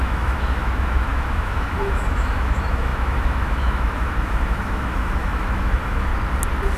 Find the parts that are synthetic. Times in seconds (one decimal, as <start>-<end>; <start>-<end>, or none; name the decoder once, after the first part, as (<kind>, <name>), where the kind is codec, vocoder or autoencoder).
0.0-6.1 (autoencoder, DAC-VAE)